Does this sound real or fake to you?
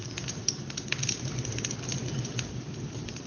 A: fake